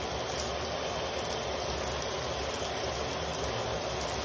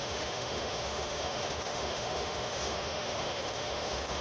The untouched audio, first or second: first